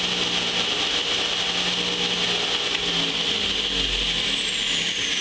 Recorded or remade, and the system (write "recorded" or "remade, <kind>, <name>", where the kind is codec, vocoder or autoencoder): recorded